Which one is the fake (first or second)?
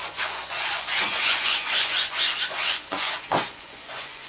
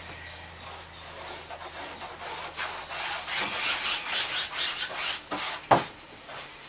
first